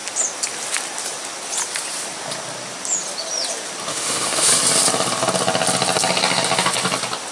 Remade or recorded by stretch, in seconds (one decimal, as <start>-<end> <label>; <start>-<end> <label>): 0.0-3.9 recorded; 3.9-4.5 remade; 4.5-7.3 recorded